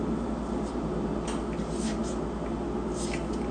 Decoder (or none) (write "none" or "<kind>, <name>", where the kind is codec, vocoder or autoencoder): none